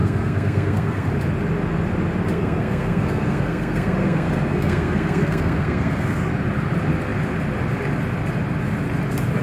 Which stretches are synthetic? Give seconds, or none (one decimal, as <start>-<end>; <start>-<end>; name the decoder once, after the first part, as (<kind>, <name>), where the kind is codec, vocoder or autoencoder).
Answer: 0.0-1.1 (codec, SNAC); 2.3-6.3